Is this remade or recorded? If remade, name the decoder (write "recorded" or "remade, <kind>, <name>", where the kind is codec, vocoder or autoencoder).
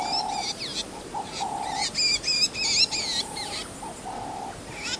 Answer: recorded